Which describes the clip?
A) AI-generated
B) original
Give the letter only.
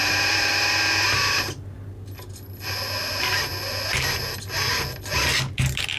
B